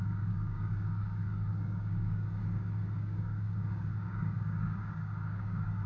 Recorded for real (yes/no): no